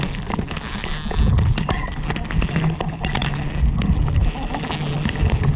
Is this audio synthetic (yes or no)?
no